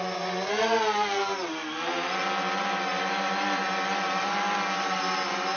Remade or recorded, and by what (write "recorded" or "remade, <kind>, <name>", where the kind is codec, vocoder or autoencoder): recorded